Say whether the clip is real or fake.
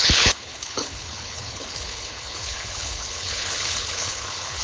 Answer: fake